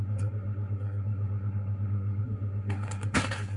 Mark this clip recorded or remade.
remade